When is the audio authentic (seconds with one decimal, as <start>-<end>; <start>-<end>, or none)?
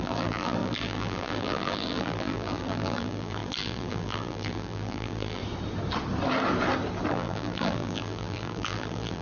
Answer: 5.4-7.1